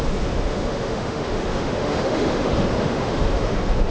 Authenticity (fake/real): fake